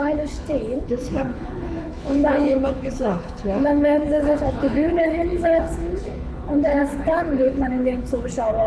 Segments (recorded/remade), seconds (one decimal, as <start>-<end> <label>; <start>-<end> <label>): 0.0-8.7 remade